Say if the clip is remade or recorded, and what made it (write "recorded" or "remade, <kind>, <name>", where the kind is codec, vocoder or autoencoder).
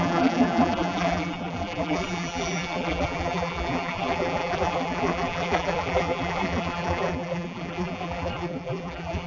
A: remade, vocoder, BigVGAN v2